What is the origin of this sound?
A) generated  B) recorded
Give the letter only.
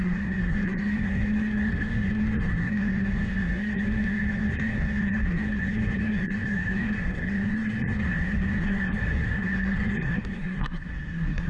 A